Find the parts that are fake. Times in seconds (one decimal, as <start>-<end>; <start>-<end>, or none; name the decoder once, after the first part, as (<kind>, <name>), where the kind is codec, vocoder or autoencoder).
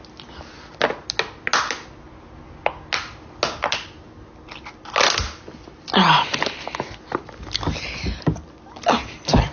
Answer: none